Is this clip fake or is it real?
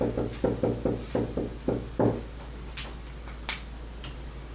real